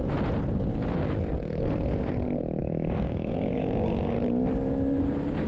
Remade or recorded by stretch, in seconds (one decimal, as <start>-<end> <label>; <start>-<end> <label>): 0.0-2.6 recorded; 2.6-4.1 remade; 4.1-5.5 recorded

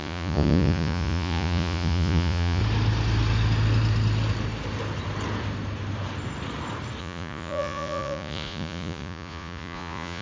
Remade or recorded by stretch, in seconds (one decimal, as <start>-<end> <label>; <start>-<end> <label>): 0.0-2.6 remade; 2.6-7.0 recorded; 7.0-10.2 remade